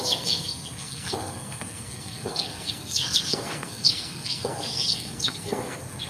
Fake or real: fake